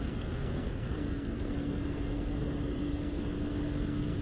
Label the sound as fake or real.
fake